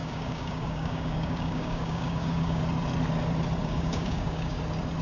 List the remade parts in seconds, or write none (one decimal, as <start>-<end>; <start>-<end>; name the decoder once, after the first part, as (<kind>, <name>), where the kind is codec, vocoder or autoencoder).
0.0-2.6 (codec, DAC); 3.6-4.6